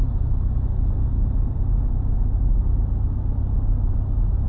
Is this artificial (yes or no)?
no